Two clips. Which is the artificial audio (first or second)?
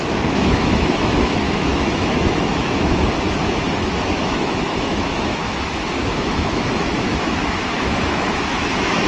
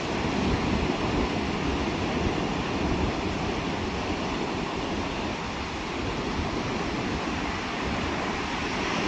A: first